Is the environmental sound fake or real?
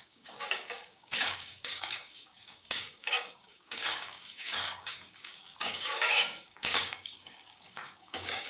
fake